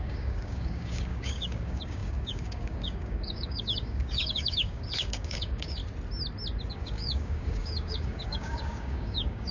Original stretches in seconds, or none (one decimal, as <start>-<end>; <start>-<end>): 5.8-6.7